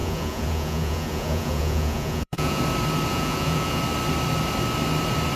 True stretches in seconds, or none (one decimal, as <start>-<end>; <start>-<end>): 2.6-3.1; 3.8-5.4